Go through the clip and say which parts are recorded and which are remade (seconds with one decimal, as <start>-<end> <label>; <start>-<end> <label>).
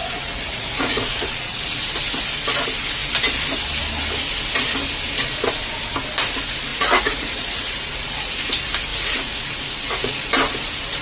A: 0.0-1.9 remade; 1.9-6.7 recorded; 6.7-8.3 remade; 8.3-8.9 recorded; 8.9-10.3 remade; 10.3-11.0 recorded